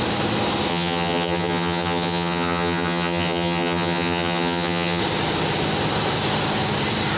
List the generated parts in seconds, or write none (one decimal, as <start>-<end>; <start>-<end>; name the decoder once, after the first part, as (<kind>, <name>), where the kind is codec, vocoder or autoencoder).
0.7-5.0 (vocoder, HiFi-GAN)